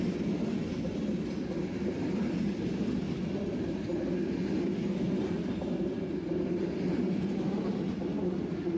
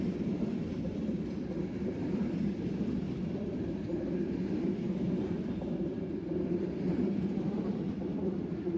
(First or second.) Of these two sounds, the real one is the first